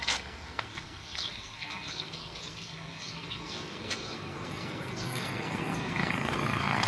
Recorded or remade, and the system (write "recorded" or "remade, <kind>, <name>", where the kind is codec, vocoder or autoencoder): remade, codec, SNAC